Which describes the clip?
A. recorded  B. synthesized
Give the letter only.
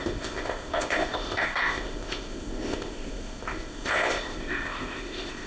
B